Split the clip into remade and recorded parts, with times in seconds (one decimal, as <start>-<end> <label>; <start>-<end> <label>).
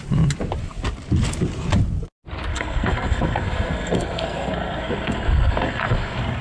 0.0-2.5 recorded; 2.5-6.4 remade